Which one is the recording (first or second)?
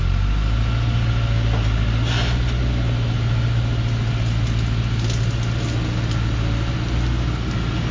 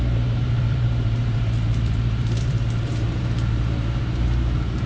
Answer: first